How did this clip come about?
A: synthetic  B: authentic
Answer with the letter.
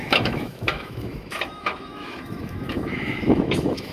A